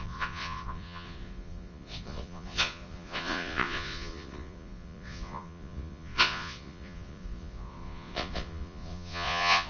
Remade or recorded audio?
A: remade